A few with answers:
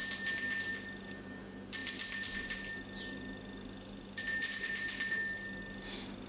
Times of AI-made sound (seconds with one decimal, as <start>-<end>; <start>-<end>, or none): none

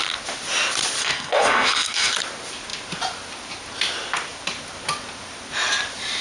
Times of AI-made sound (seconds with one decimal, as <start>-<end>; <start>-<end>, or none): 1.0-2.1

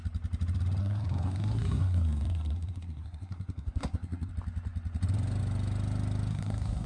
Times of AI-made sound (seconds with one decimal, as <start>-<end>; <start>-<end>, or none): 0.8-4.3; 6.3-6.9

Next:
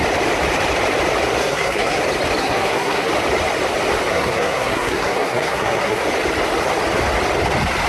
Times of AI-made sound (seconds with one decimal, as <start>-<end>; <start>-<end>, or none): 1.4-2.0; 2.4-3.1; 4.1-6.0

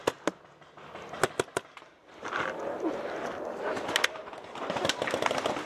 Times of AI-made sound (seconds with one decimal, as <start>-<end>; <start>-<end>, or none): none

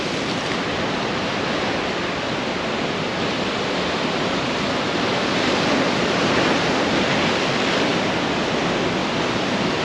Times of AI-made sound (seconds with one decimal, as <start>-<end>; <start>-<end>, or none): none